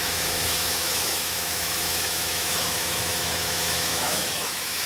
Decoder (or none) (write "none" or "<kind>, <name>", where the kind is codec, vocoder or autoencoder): autoencoder, DAC-VAE